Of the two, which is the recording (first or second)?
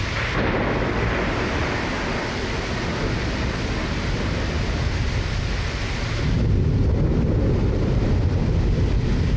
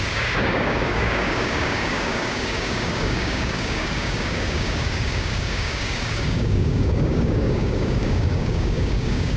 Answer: first